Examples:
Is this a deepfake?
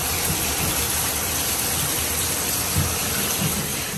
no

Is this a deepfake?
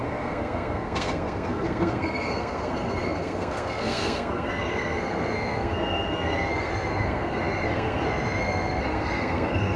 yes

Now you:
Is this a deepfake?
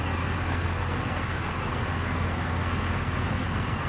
yes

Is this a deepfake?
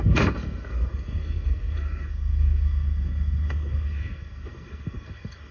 yes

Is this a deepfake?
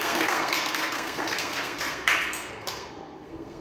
yes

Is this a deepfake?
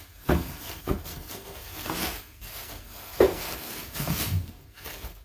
yes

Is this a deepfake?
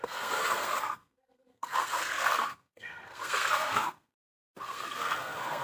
yes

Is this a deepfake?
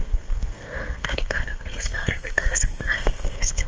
yes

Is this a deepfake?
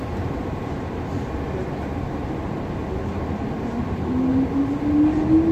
no